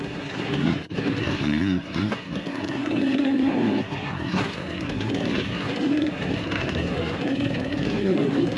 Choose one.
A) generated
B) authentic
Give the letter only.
A